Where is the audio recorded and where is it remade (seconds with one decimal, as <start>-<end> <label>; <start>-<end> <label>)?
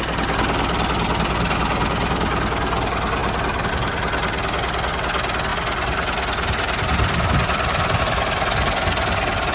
0.0-9.5 recorded